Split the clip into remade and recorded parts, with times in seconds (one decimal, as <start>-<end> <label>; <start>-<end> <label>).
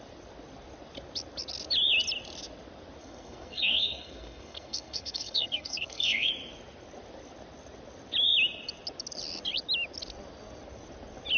0.0-3.0 recorded; 3.0-6.3 remade; 6.3-11.4 recorded